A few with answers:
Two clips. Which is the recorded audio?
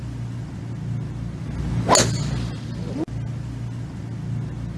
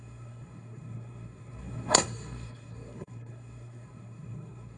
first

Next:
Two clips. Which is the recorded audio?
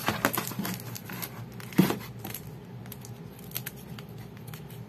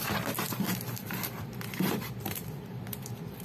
first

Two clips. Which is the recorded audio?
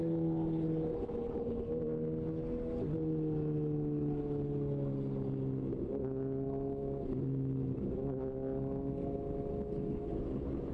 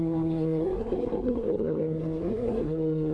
first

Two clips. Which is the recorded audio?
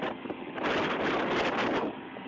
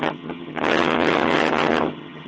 first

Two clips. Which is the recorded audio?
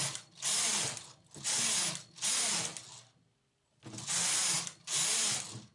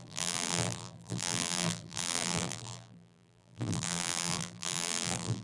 first